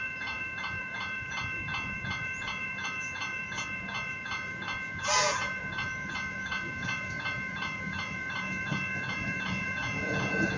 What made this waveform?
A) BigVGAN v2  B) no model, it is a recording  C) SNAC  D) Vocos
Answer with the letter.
D